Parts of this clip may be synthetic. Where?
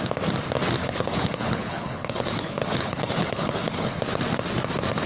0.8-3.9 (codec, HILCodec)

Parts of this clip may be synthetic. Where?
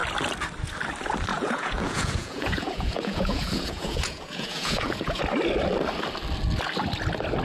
1.3-5.2 (vocoder, Vocos)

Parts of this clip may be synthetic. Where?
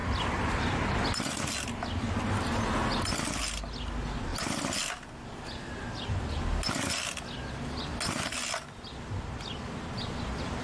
none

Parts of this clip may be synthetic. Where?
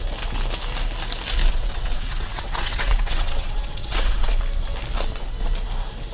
1.5-4.4 (vocoder, WaveNeXt)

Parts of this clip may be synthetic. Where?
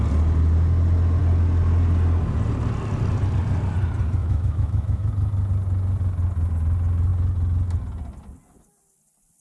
4.2-5.1 (autoencoder, DAC-VAE)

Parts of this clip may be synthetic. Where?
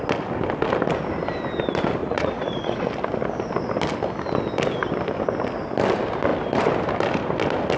2.0-2.9 (vocoder, Vocos)